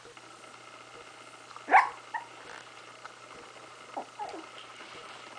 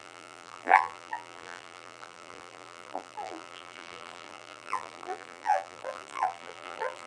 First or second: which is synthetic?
second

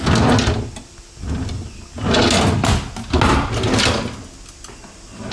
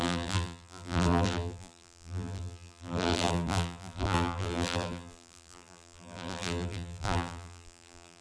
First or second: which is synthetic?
second